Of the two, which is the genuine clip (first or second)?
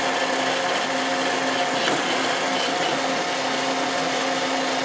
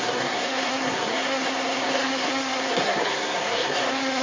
first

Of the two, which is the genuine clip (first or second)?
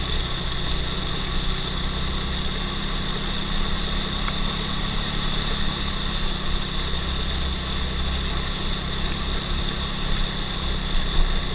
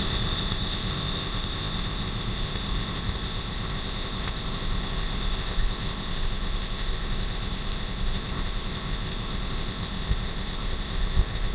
first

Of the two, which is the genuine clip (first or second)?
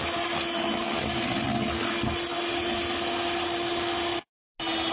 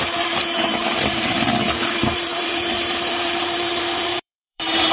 first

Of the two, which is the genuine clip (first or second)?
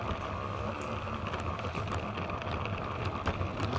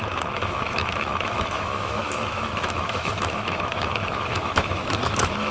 first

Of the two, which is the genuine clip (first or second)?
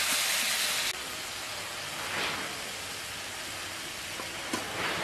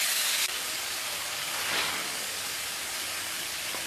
first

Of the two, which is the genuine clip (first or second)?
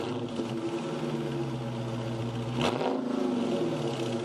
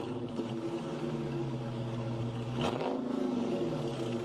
first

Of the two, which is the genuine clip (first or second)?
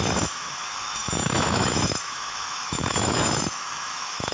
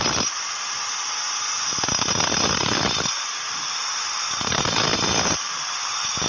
second